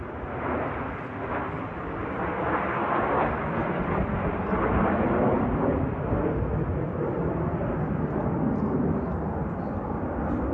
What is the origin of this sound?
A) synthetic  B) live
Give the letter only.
B